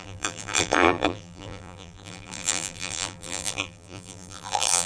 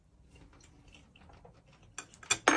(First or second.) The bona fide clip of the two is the second